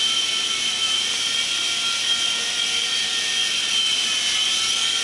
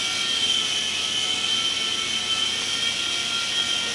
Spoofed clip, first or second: first